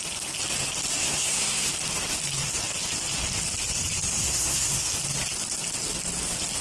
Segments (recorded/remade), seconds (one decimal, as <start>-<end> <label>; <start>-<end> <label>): 0.0-1.0 recorded; 1.0-1.7 remade; 1.7-4.2 recorded; 4.2-4.9 remade; 4.9-6.6 recorded